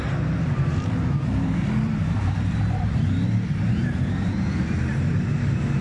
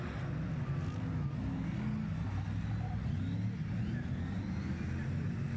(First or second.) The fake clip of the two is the first